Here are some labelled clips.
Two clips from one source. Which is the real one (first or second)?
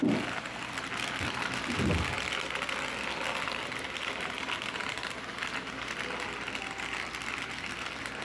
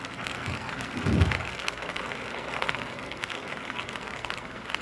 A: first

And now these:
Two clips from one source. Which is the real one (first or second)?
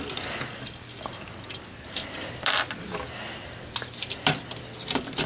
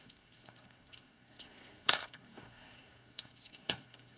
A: first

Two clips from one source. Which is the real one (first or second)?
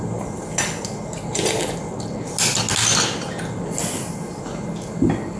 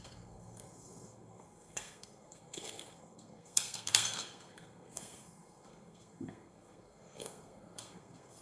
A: first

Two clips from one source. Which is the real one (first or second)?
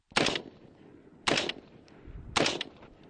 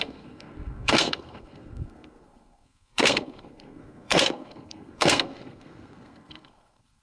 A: first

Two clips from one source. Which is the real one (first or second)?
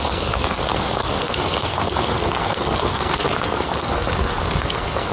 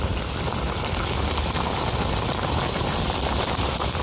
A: second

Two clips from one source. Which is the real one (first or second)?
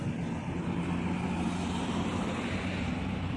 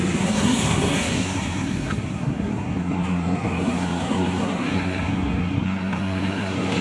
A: first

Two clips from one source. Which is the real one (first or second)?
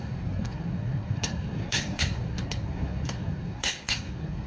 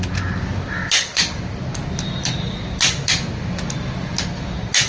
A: second